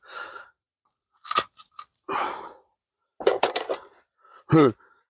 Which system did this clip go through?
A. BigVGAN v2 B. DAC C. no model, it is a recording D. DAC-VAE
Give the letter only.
A